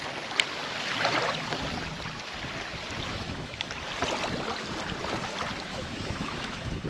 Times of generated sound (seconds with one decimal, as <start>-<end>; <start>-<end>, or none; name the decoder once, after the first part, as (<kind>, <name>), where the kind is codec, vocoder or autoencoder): 3.1-3.7 (autoencoder, DAC-VAE); 5.7-6.9